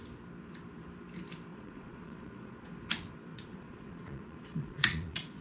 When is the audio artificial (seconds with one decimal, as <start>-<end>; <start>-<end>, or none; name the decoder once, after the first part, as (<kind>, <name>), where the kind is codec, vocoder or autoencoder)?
1.5-2.7 (vocoder, Vocos); 3.3-5.4